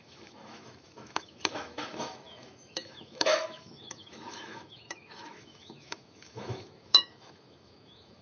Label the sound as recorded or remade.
remade